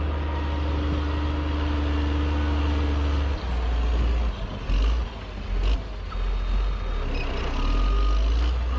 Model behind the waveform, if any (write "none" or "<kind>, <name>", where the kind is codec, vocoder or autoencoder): none